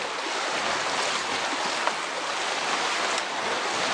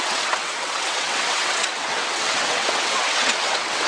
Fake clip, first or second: second